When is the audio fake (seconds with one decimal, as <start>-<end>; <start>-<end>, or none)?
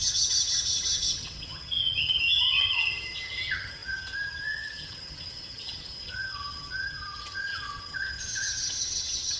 0.0-9.4